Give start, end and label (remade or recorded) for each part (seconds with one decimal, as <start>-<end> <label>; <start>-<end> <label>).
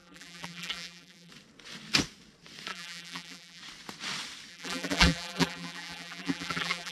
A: 0.0-1.3 remade; 1.3-2.7 recorded; 2.7-3.6 remade; 3.6-4.5 recorded; 4.5-6.9 remade